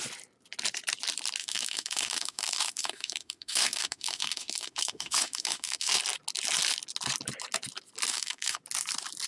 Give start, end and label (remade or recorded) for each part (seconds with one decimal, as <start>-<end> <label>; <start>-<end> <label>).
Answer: 0.0-1.4 recorded; 1.4-6.0 remade; 6.0-8.1 recorded; 8.1-8.6 remade; 8.6-9.3 recorded